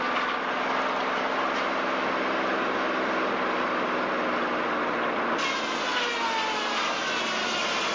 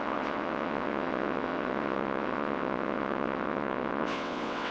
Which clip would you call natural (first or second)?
first